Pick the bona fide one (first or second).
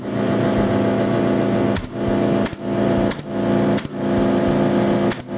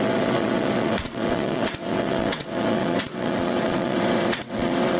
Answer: first